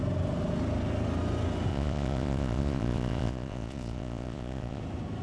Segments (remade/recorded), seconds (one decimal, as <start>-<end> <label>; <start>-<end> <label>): 0.0-1.7 recorded; 1.7-4.8 remade; 4.8-5.2 recorded